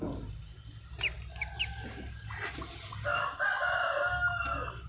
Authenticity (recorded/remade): recorded